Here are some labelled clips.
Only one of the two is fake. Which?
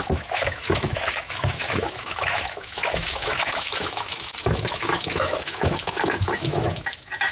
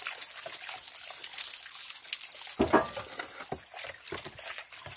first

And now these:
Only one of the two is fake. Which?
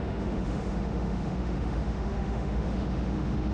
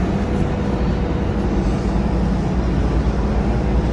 first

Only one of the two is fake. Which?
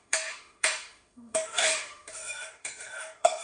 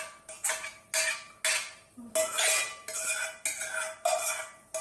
first